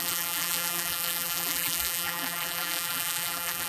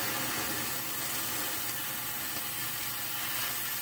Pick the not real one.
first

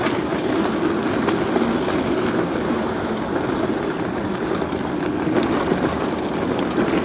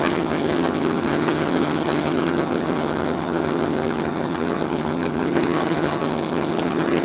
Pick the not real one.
second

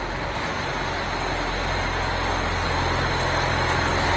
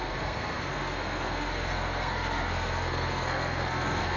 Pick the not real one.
second